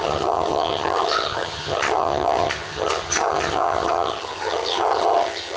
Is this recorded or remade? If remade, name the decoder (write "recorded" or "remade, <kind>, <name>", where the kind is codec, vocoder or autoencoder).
remade, vocoder, HiFi-GAN